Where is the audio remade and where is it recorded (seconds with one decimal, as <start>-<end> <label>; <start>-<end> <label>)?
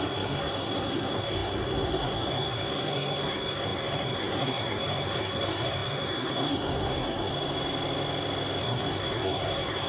0.0-7.3 remade; 7.3-8.6 recorded; 8.6-9.9 remade